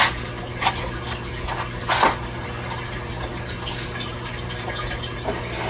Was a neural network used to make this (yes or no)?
no